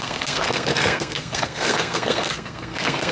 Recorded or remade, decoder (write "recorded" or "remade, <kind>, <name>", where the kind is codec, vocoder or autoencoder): remade, codec, SNAC